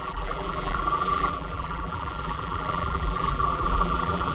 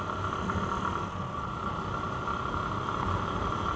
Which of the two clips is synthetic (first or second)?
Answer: first